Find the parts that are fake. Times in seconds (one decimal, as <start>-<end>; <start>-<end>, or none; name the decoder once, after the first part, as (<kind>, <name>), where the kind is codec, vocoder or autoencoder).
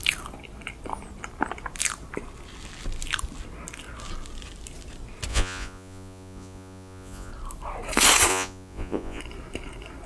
5.3-7.3 (vocoder, Vocos); 8.3-9.2